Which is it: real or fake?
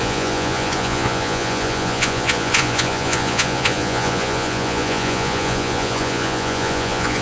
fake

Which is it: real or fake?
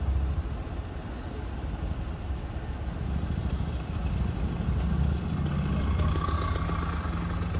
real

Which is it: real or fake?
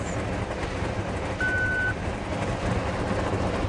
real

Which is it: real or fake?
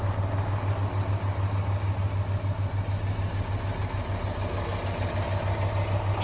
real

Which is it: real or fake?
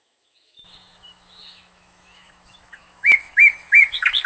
fake